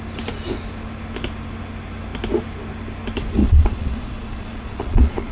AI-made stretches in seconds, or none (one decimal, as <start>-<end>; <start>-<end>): 3.4-5.3